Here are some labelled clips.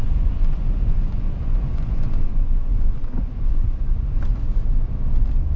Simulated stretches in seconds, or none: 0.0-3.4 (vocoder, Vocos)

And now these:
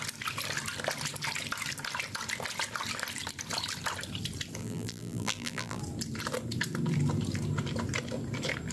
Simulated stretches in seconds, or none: 4.6-5.8 (vocoder, BigVGAN v2)

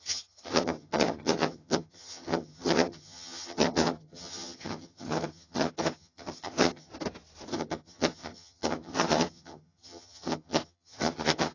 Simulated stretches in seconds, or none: 0.0-6.9 (vocoder, HiFi-GAN); 7.5-11.5

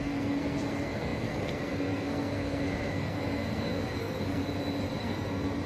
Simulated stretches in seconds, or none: 0.0-4.4 (codec, SNAC); 5.0-5.7

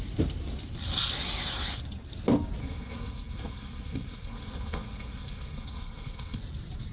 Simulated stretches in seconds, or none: 2.6-6.4 (codec, SNAC)

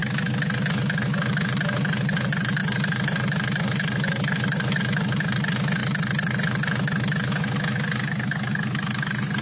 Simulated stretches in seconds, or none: none

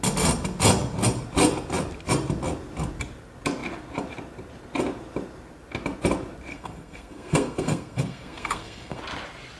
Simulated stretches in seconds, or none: 6.5-9.0 (codec, SNAC)